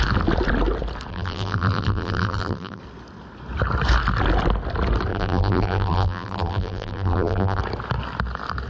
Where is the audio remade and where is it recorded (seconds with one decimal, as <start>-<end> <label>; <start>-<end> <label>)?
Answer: 0.0-1.1 recorded; 1.1-2.8 remade; 2.8-5.1 recorded; 5.1-7.6 remade; 7.6-8.7 recorded